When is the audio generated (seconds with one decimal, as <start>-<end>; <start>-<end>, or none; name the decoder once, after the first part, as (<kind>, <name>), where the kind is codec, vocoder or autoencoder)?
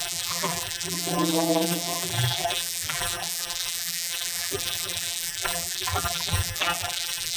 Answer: 0.0-7.4 (vocoder, BigVGAN v2)